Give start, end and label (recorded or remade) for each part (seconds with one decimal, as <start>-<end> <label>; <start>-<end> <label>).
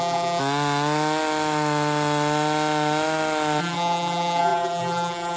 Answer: 0.0-0.4 remade; 0.4-3.6 recorded; 3.6-5.4 remade